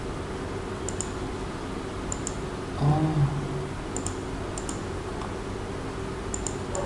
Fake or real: real